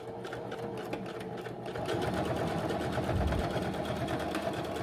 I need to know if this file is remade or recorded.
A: recorded